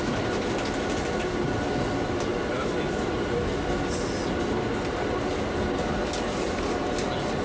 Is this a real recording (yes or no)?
yes